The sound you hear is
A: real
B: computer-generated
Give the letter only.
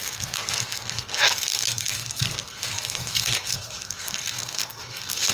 B